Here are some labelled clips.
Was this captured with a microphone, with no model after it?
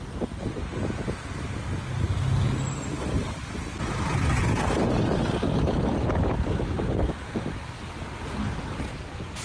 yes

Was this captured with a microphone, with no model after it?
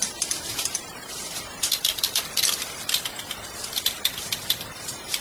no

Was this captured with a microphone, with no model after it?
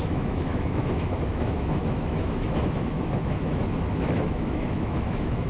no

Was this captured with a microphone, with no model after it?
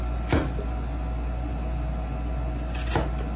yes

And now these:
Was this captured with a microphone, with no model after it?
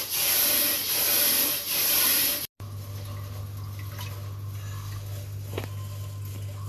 yes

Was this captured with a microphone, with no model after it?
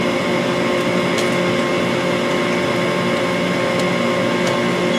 yes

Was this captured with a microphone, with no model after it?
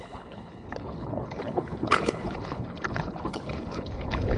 no